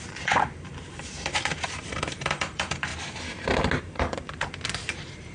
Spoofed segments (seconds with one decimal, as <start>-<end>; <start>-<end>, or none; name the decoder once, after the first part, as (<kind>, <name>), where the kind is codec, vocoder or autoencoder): 0.0-2.9 (vocoder, BigVGAN v2); 3.8-5.3